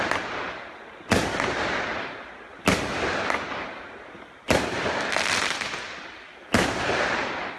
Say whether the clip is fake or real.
real